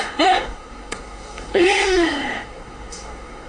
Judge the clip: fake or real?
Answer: fake